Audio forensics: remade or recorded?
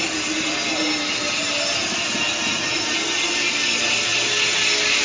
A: recorded